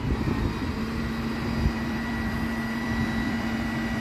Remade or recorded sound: remade